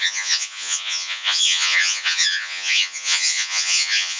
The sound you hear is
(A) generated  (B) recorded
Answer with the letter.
A